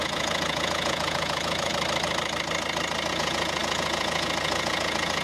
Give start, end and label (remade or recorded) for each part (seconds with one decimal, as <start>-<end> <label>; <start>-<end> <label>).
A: 0.0-1.7 remade; 1.7-3.1 recorded; 3.1-5.2 remade